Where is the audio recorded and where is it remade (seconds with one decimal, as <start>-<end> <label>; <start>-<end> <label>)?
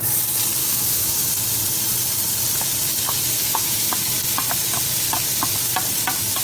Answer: 0.0-0.6 recorded; 0.6-1.3 remade; 1.3-3.4 recorded; 3.4-3.9 remade; 3.9-6.4 recorded